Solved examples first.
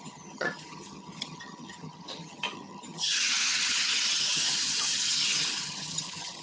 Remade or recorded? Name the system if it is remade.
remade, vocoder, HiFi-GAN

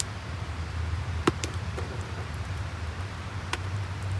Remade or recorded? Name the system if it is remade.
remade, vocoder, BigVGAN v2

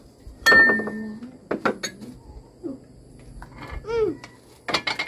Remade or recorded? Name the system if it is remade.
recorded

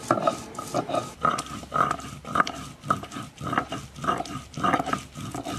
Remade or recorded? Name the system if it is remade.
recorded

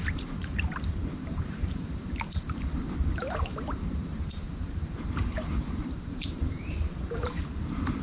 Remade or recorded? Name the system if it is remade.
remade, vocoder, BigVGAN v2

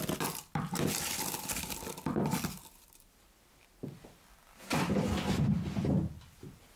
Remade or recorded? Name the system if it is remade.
recorded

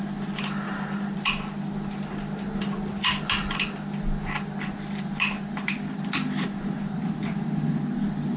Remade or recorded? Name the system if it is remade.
recorded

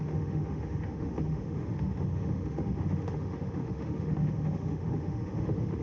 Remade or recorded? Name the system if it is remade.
remade, autoencoder, DAC-VAE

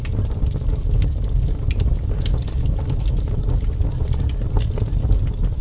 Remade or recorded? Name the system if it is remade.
recorded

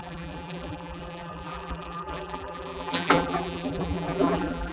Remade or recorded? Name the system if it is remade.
remade, vocoder, BigVGAN v2